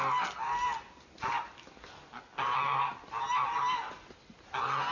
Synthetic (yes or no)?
no